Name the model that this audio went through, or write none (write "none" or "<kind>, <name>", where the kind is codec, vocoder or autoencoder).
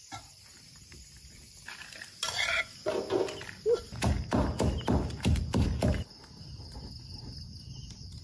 none